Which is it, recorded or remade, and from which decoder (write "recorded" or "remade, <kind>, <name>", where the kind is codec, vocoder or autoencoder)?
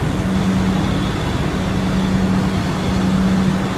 recorded